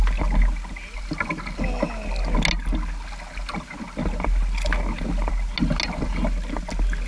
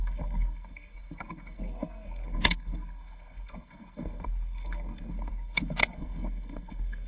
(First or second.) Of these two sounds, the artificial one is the second